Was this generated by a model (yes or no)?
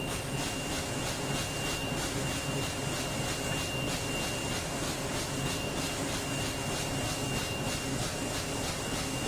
no